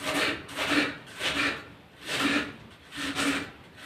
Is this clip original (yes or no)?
no